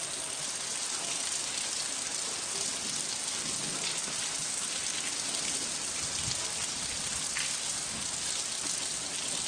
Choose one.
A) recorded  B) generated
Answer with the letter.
A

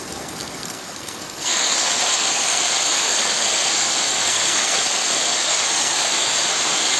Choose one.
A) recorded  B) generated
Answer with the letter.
B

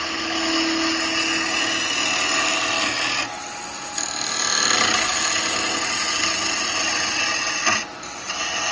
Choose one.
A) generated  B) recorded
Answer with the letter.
B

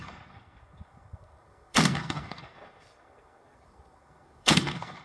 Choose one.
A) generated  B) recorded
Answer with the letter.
A